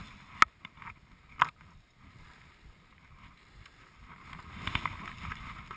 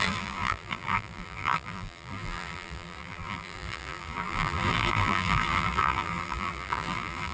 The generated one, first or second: second